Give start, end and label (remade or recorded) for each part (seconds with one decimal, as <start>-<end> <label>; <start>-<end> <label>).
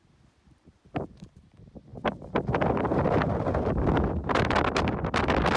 0.0-5.6 remade